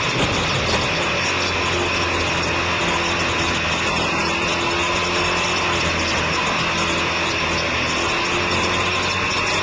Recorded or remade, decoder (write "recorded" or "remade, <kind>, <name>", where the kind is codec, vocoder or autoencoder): recorded